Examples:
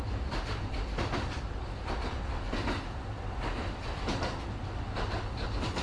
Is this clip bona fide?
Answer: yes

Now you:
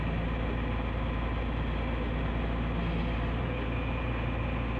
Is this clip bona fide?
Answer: yes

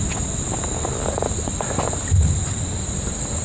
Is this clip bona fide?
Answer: yes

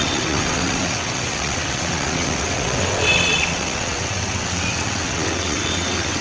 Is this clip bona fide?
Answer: no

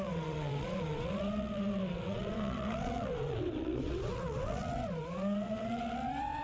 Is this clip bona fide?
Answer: no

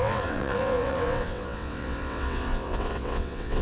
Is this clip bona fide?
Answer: no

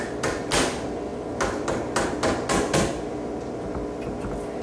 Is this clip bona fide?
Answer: yes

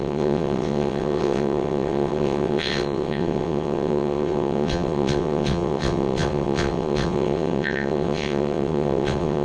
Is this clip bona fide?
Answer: no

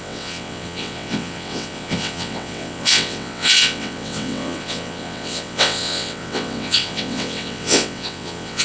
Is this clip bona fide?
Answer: no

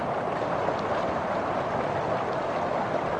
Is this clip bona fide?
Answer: yes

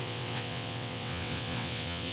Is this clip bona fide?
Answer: no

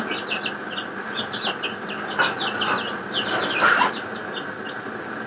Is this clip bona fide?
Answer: yes